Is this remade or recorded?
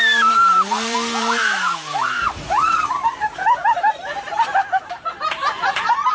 remade